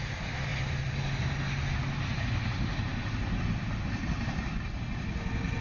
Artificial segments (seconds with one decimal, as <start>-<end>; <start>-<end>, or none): none